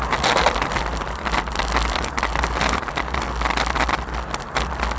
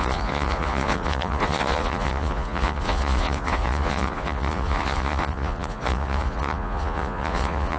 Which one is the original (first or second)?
first